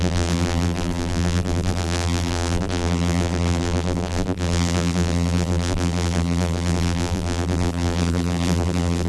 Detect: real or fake fake